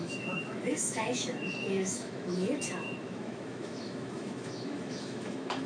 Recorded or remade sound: remade